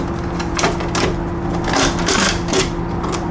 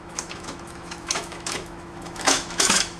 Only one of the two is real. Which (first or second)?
first